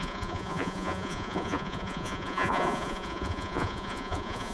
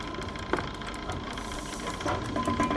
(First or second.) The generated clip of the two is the first